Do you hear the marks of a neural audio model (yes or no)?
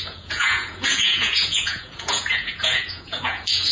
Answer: yes